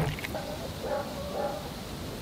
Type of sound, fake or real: fake